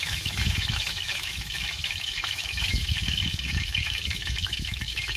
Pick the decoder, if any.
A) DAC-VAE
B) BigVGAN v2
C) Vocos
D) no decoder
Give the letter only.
A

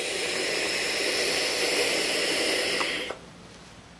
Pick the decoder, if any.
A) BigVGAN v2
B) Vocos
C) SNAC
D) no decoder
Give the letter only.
D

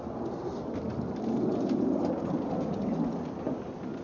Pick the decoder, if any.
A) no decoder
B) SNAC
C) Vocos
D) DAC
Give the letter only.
A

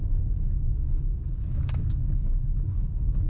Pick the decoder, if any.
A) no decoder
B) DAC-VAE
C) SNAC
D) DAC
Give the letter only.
D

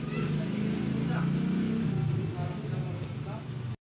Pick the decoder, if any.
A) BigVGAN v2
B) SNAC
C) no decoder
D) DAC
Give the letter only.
C